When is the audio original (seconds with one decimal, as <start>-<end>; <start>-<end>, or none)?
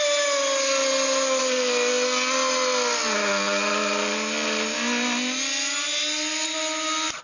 0.0-7.2